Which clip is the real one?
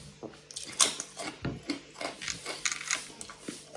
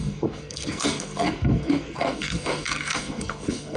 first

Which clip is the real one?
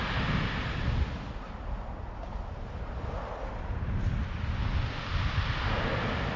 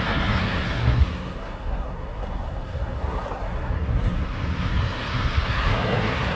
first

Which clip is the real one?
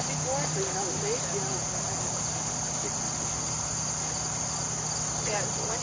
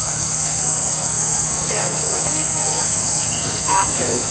first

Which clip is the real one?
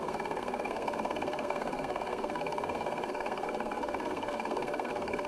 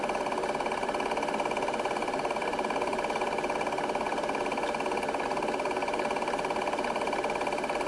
second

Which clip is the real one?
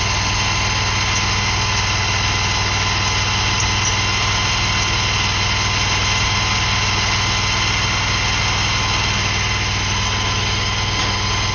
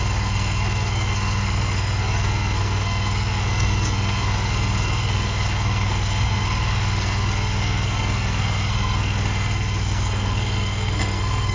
first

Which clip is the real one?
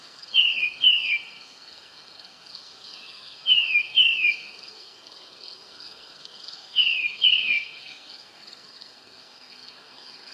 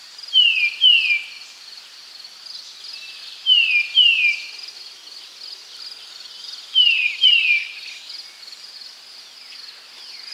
second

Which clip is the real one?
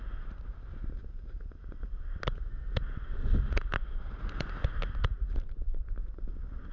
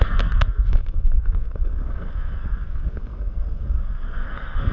first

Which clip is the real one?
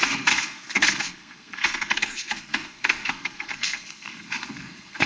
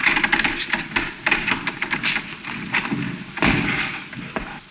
second